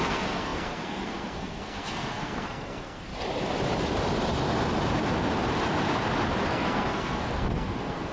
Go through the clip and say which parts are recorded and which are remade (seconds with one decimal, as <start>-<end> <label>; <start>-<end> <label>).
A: 0.0-3.1 remade; 3.1-6.5 recorded; 6.5-8.1 remade